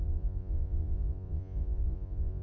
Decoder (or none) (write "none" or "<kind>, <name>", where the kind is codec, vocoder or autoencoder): vocoder, Vocos